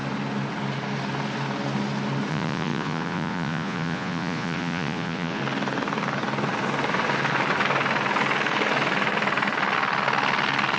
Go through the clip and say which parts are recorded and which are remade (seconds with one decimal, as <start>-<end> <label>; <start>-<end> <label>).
0.0-2.3 recorded; 2.3-5.4 remade; 5.4-10.8 recorded